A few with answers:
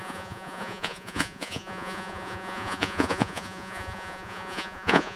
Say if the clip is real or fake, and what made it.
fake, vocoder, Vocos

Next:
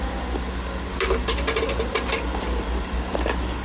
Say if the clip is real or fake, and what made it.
real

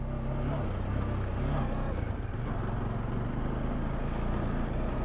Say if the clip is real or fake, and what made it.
real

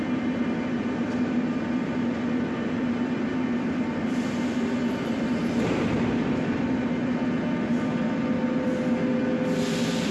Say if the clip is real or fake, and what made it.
real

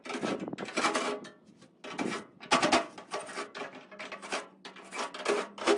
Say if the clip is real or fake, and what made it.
real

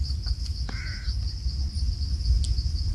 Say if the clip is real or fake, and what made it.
real